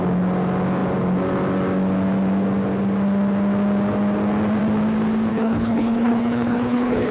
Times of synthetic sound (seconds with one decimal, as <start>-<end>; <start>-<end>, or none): 5.3-7.1